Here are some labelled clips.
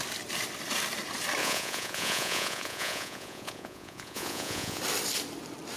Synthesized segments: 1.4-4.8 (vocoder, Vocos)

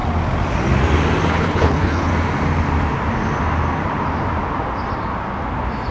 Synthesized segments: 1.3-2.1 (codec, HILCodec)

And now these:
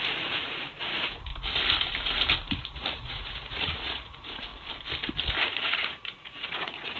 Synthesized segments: 0.0-1.3 (vocoder, Vocos); 2.5-4.5; 5.4-7.0

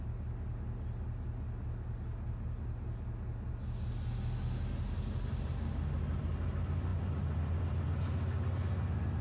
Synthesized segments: none

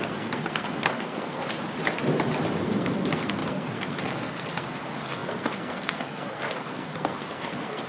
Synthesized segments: 0.0-1.4 (codec, SNAC); 2.6-7.9

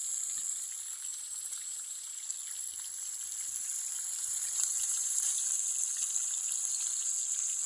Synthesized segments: 1.1-2.1 (vocoder, BigVGAN v2); 4.2-5.3

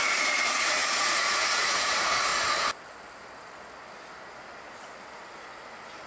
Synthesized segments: 0.0-2.3 (vocoder, Vocos)